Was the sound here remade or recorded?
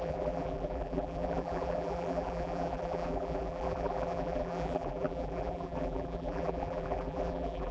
remade